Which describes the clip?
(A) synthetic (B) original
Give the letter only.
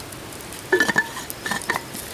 B